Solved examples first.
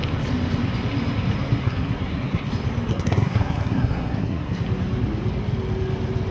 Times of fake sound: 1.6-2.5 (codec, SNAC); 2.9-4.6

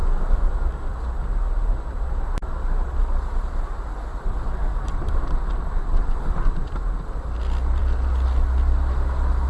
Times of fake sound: none

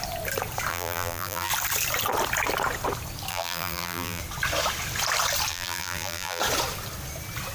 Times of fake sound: 0.7-1.5 (vocoder, BigVGAN v2); 3.3-4.2; 5.5-6.4